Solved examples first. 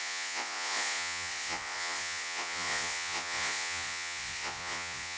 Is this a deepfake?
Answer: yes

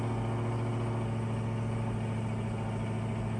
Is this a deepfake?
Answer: no